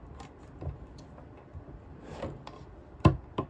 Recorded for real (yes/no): no